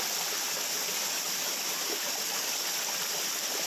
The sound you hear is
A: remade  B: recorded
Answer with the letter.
B